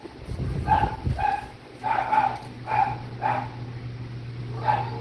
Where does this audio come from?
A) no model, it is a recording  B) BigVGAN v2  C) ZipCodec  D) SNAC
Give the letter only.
A